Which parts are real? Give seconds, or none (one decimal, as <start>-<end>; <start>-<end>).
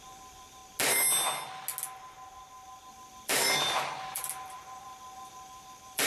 0.6-2.9